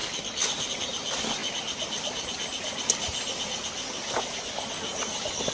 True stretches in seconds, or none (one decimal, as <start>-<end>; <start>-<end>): 0.0-5.5